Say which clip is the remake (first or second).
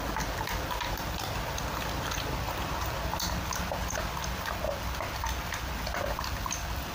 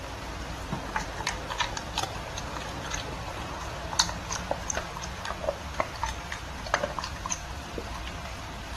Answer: second